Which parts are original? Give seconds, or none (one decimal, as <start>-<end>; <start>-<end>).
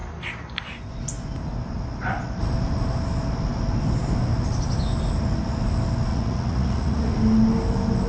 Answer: 0.0-6.1; 7.1-8.1